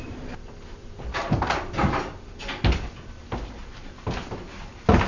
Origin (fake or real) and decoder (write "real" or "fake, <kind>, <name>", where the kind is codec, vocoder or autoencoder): real